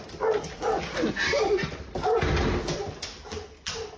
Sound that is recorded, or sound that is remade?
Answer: recorded